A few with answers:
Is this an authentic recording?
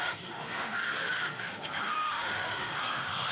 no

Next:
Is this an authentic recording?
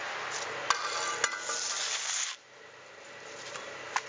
yes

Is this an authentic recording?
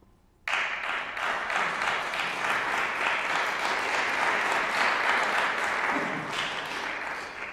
yes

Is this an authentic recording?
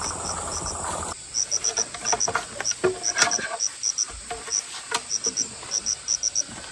yes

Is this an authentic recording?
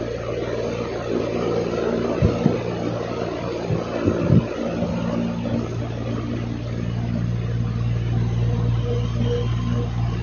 yes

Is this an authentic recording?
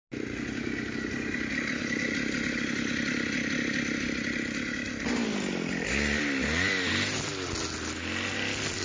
yes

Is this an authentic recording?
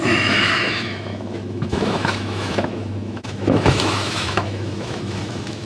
no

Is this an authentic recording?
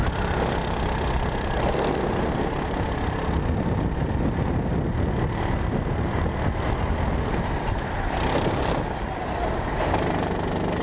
yes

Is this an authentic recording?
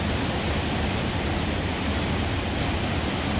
yes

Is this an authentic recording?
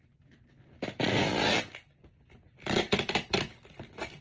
yes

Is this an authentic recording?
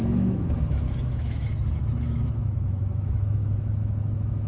no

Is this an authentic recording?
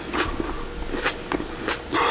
yes